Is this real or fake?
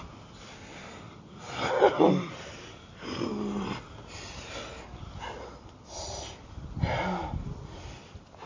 real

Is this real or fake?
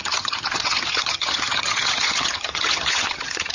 fake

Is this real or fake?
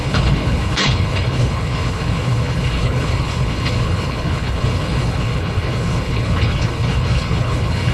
fake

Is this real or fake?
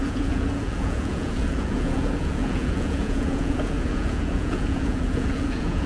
fake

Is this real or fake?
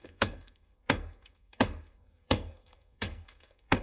fake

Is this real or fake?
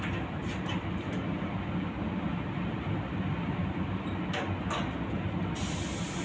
real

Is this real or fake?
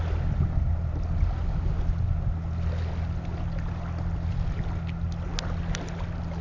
real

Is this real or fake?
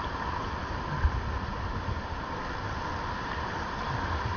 real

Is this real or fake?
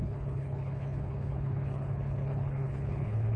fake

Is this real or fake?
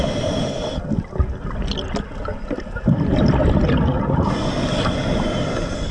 real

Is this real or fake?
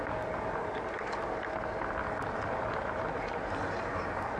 real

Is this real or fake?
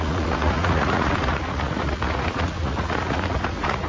fake